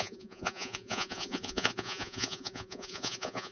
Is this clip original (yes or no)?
no